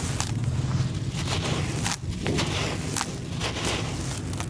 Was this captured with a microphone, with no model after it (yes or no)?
yes